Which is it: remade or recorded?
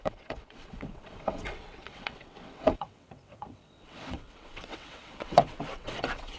remade